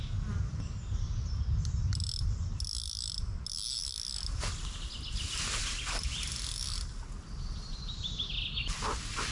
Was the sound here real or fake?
real